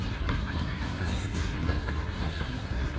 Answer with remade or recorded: remade